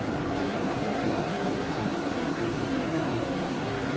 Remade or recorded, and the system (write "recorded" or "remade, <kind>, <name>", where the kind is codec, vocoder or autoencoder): remade, codec, SNAC